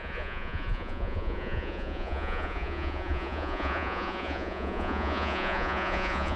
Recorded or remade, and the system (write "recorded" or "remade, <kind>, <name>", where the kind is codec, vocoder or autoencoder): remade, vocoder, Vocos